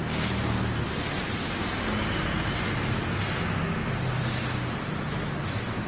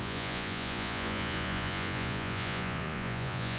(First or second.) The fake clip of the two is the second